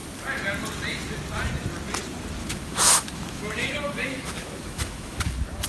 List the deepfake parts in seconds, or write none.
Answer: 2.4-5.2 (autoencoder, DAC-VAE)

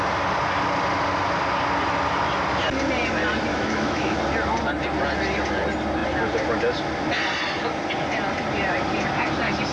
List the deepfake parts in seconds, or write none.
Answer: 3.5-4.2 (autoencoder, DAC-VAE)

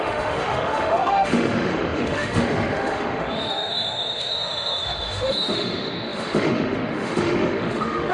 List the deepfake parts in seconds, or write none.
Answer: 0.0-8.1 (autoencoder, DAC-VAE)

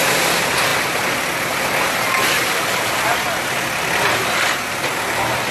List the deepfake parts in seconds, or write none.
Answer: none

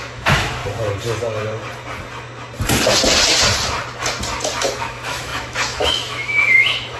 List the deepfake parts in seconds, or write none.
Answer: 0.0-0.6 (autoencoder, DAC-VAE); 4.8-7.0

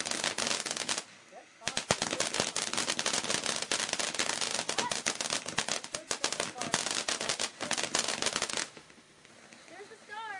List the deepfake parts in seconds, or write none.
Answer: 8.6-9.3 (autoencoder, DAC-VAE)